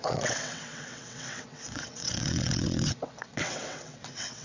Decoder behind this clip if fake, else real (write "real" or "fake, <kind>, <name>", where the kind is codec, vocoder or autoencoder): fake, vocoder, WaveNeXt